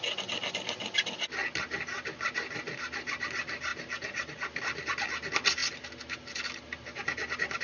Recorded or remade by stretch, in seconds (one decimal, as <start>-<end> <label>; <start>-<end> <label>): 0.0-7.6 recorded